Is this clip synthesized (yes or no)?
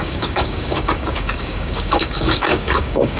yes